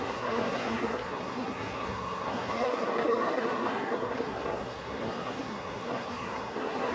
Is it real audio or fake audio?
fake